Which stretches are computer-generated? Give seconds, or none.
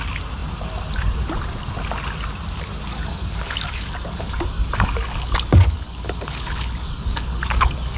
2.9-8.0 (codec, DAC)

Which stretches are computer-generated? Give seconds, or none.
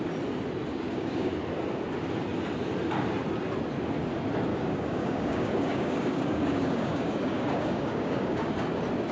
0.7-1.3 (codec, DAC); 4.5-8.5